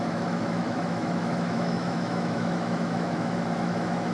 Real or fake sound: fake